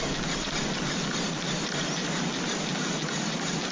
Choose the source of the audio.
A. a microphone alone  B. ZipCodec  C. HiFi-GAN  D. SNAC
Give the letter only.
A